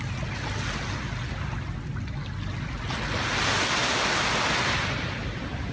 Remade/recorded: recorded